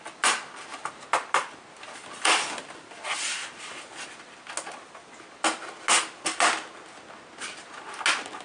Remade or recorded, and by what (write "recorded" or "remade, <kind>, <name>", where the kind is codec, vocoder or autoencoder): recorded